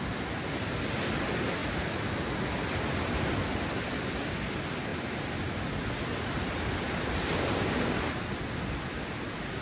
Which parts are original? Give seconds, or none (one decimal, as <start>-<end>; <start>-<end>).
0.0-9.6